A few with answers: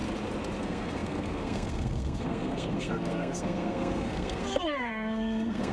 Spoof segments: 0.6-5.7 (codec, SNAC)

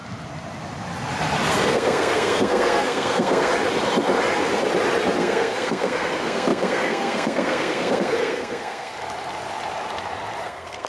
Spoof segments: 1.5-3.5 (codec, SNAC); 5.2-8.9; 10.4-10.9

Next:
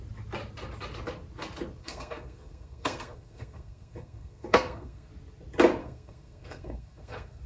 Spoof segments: 1.8-5.1 (codec, SNAC); 5.8-7.5

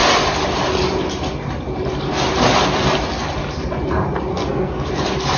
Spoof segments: 4.3-4.9 (codec, SNAC)

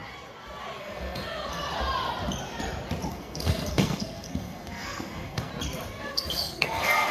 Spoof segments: 0.8-1.6 (codec, SNAC); 3.1-5.5; 6.0-7.1

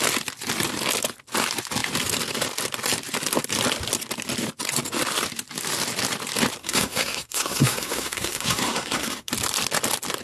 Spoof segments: 6.6-9.3 (codec, SNAC)